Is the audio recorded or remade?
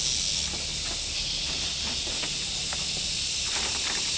recorded